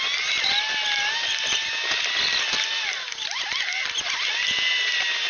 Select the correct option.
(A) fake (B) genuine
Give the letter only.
B